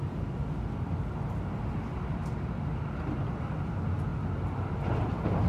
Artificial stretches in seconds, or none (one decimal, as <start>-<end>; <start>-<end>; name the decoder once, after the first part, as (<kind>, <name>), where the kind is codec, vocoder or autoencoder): none